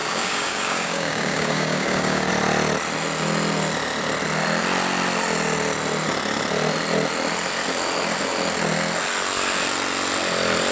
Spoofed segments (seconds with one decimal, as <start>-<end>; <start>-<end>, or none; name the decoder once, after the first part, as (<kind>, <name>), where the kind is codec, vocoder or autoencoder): 0.0-2.3 (codec, DAC)